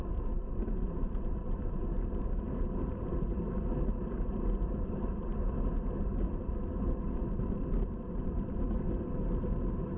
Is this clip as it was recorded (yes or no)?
yes